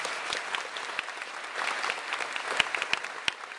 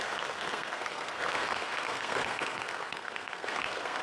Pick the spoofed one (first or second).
second